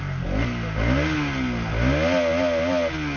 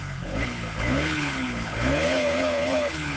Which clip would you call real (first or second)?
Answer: first